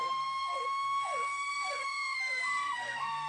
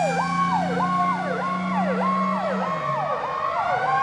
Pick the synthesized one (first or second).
first